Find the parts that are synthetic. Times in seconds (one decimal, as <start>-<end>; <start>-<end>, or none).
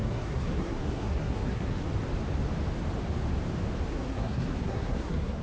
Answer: 0.0-1.9; 3.9-5.4